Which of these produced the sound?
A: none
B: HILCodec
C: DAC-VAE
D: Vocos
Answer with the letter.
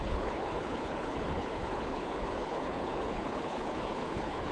B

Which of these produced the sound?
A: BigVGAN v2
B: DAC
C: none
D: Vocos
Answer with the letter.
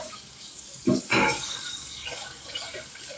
B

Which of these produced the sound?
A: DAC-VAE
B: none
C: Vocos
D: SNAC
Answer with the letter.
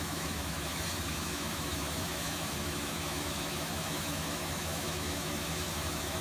A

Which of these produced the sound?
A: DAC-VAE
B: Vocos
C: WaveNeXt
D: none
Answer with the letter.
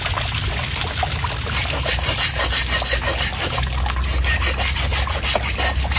D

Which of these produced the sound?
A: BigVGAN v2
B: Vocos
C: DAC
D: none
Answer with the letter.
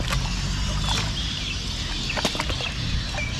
D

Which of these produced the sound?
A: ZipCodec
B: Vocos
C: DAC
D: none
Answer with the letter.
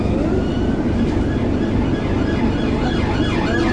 D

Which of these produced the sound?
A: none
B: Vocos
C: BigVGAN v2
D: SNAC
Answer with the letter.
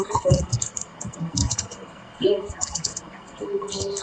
D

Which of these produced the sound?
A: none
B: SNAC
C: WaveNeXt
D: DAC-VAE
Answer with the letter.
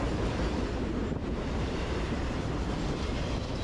A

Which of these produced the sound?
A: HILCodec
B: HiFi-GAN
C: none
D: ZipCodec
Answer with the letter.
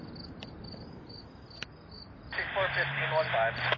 C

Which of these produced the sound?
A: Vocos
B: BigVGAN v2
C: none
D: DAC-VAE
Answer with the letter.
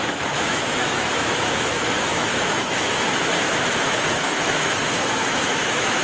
D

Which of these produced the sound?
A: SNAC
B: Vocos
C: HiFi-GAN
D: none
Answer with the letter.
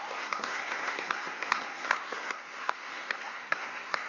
A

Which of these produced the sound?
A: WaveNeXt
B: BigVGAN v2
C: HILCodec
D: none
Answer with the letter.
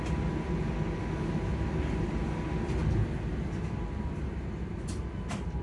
D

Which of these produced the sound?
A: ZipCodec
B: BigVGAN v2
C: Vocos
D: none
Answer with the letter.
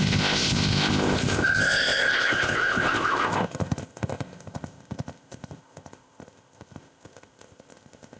A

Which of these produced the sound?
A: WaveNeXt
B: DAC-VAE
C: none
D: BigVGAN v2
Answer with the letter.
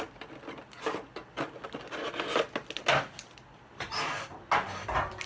C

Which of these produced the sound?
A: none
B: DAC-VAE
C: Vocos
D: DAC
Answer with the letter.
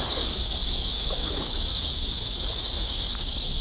D